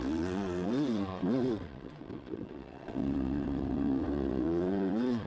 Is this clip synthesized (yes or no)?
yes